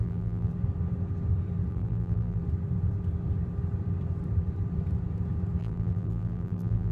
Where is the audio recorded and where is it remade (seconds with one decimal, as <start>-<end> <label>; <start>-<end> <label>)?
0.0-0.5 remade; 0.5-1.7 recorded; 1.7-2.4 remade; 2.4-5.6 recorded; 5.6-6.9 remade